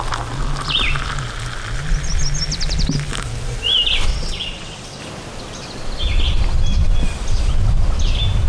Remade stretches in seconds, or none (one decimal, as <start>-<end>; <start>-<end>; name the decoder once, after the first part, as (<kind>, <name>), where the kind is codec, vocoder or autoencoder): 4.1-5.0 (vocoder, WaveNeXt)